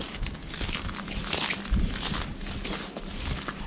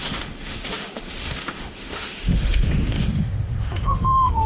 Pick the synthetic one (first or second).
second